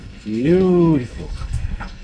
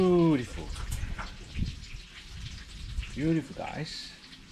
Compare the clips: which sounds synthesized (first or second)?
first